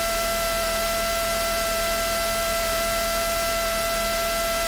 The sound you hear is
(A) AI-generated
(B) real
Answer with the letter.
B